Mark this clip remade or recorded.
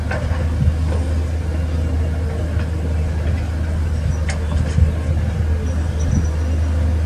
recorded